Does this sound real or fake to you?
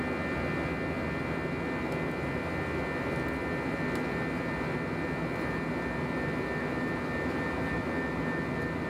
real